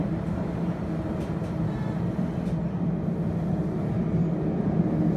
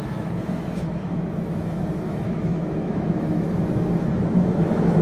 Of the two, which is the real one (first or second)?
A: first